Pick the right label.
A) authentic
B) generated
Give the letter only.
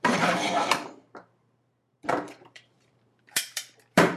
B